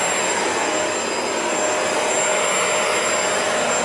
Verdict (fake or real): real